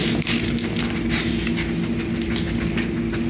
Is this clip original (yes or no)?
yes